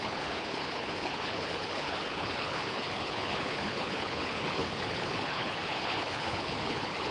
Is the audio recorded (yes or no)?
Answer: no